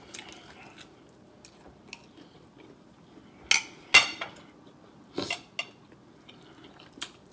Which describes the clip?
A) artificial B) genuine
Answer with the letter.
B